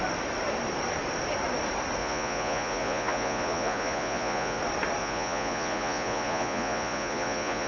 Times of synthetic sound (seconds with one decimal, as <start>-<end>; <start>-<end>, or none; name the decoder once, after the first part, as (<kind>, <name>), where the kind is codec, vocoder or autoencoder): 2.0-4.6 (vocoder, Vocos); 5.0-7.7